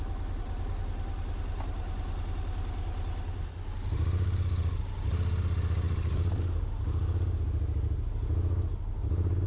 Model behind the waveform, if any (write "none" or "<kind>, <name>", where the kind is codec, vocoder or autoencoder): none